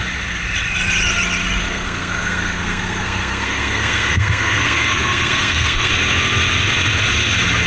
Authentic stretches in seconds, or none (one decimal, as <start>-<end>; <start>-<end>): 0.0-1.6; 5.9-7.7